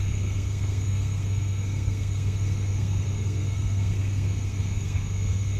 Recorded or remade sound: remade